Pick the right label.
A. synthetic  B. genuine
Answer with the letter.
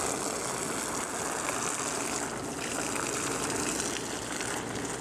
B